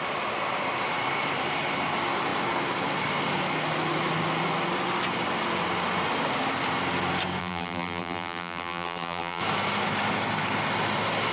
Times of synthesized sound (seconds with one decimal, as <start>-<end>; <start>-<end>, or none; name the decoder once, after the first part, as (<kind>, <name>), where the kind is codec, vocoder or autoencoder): 7.4-9.4 (vocoder, BigVGAN v2)